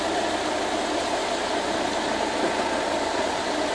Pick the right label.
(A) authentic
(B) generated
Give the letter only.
A